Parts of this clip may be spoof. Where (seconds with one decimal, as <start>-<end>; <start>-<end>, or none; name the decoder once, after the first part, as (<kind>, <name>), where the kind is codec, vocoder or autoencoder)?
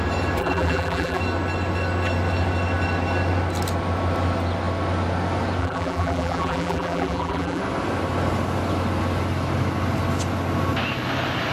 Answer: 0.4-1.2 (vocoder, BigVGAN v2); 5.6-7.6